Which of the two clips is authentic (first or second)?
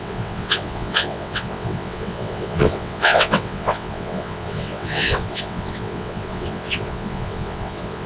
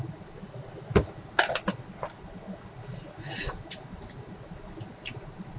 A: second